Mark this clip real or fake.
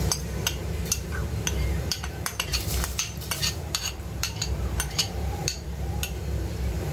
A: fake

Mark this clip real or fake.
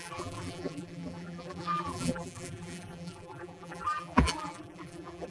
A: fake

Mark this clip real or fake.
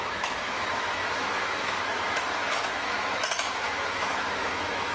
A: fake